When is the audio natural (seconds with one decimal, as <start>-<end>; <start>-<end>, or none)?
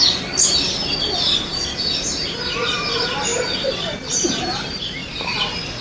0.0-3.3; 4.4-5.8